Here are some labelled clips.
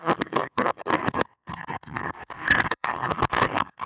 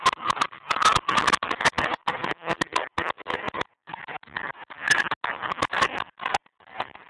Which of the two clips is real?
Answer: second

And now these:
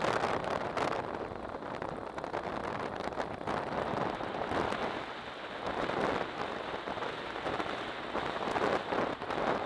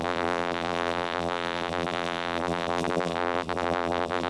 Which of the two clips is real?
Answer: first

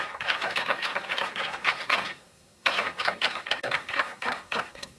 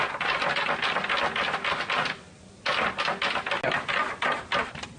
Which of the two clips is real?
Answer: second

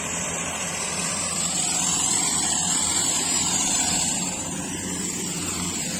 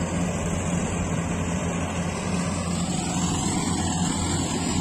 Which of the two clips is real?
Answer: second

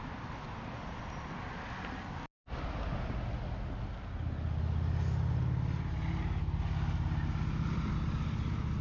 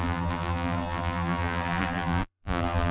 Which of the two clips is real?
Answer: first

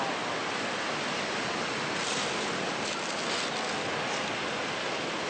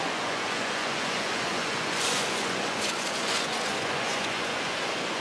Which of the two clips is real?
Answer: first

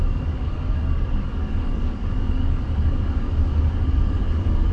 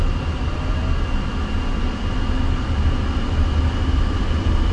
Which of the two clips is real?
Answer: second